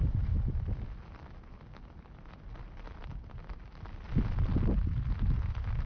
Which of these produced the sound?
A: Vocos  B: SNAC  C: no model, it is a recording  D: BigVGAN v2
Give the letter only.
C